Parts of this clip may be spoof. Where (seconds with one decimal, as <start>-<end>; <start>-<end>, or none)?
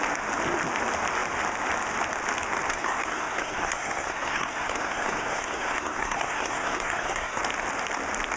2.7-7.4